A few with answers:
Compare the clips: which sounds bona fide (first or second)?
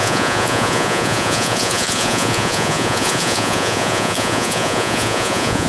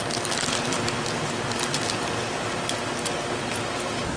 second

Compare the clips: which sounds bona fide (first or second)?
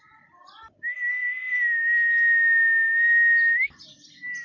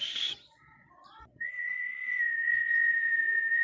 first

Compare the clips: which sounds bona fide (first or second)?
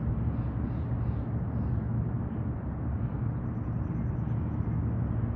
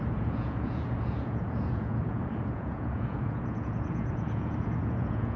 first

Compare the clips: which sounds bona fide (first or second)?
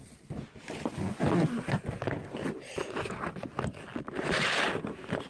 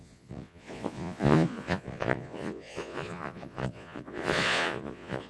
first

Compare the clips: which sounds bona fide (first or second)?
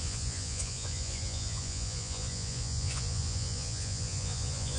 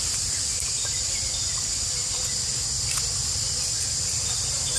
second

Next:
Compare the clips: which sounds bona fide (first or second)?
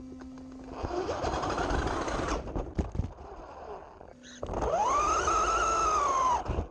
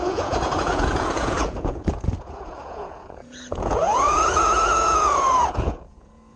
first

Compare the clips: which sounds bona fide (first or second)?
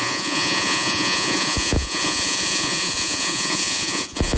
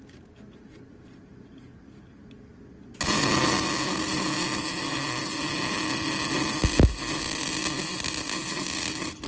second